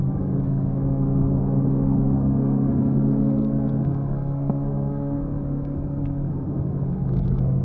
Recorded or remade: remade